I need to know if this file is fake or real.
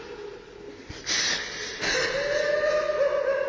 real